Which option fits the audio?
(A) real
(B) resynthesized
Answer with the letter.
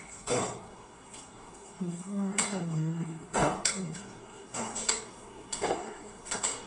B